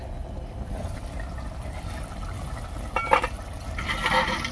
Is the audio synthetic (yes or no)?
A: no